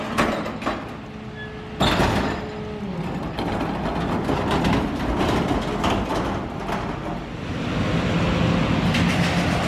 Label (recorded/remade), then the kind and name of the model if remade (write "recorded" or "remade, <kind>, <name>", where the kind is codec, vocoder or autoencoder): recorded